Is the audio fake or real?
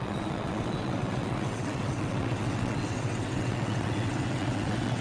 fake